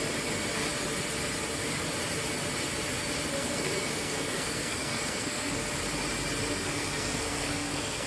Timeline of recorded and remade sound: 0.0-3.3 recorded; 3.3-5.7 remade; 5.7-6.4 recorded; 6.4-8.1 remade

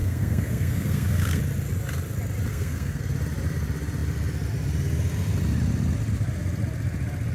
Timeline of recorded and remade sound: 0.0-1.4 remade; 1.4-2.5 recorded; 2.5-3.0 remade; 3.0-7.3 recorded